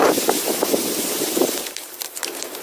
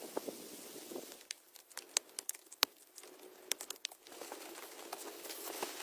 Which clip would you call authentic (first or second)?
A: second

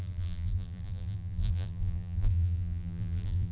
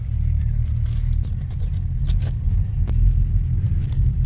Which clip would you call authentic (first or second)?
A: second